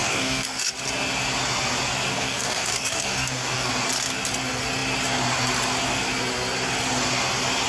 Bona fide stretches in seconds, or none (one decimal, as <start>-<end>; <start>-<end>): 0.7-2.1; 3.7-7.7